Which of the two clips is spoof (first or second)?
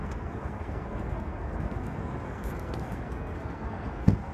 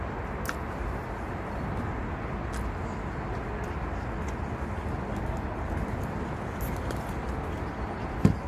first